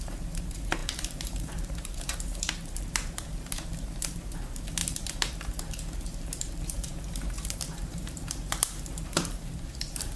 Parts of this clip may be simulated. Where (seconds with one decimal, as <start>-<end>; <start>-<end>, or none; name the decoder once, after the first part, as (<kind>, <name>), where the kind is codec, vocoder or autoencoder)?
0.0-10.2 (vocoder, BigVGAN v2)

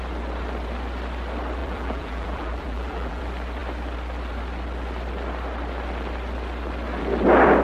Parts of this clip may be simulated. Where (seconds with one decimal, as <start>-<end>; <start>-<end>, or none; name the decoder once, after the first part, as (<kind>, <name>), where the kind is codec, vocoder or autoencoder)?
1.6-3.2 (vocoder, BigVGAN v2)

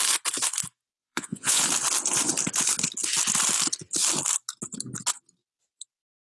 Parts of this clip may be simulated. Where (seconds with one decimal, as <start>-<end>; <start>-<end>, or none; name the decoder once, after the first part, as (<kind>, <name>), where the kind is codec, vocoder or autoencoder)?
1.0-1.6 (vocoder, Vocos)